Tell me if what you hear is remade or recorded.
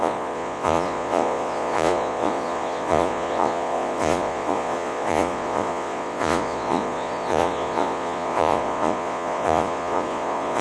remade